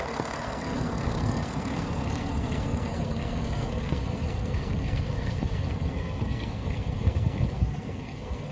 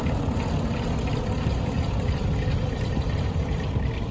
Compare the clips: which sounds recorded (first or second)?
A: second